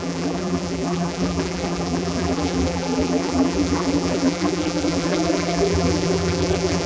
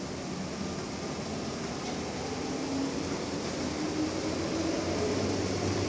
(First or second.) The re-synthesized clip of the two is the first